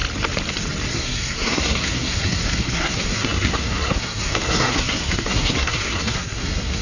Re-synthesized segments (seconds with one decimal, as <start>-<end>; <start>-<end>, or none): 0.9-6.8